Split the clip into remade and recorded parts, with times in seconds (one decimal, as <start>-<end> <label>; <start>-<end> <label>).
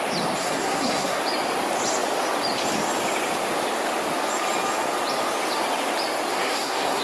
0.0-0.4 recorded; 0.4-1.2 remade; 1.2-6.3 recorded; 6.3-7.0 remade